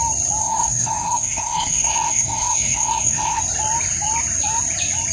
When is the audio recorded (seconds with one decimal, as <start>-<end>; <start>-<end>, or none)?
0.0-0.4; 3.4-5.1